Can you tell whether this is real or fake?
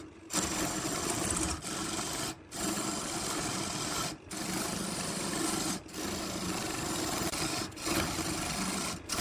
real